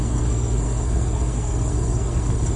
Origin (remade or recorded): remade